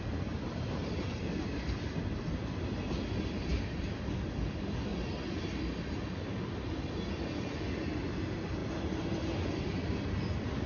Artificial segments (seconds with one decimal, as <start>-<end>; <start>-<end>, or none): 0.0-4.9; 6.4-8.6; 9.6-10.7